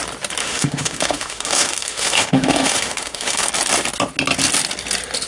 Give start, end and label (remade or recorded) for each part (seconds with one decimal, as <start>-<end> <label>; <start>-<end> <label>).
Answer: 0.0-0.4 recorded; 0.4-3.5 remade; 3.5-5.3 recorded